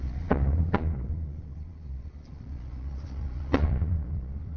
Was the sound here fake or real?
fake